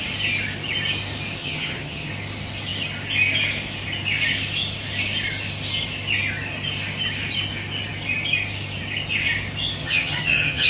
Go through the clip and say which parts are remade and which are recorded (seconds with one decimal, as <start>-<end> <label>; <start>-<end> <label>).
0.0-1.4 recorded; 1.4-2.1 remade; 2.1-9.8 recorded; 9.8-10.7 remade